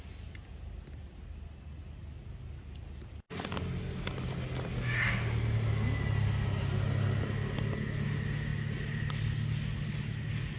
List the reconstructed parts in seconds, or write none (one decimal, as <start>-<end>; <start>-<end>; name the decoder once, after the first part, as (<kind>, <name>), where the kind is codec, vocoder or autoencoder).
none